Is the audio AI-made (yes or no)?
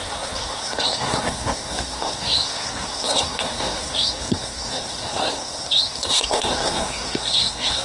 yes